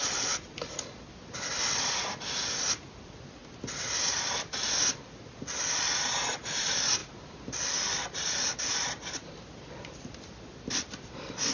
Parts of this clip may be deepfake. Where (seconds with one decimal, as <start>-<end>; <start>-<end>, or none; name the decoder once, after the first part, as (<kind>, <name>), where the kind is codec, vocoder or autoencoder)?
0.0-3.4 (vocoder, BigVGAN v2); 4.1-11.5